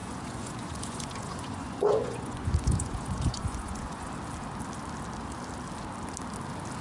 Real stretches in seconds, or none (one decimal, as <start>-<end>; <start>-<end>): 4.1-6.8